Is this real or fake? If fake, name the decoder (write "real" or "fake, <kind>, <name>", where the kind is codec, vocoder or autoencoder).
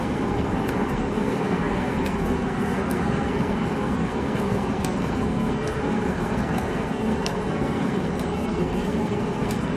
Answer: fake, codec, SNAC